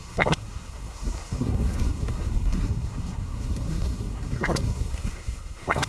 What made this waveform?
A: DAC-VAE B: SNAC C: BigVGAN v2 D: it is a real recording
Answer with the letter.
B